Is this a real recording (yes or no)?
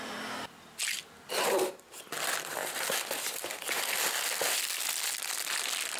no